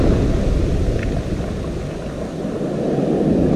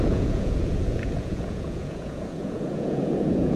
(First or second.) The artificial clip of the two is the second